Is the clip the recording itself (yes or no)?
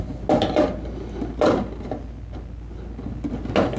yes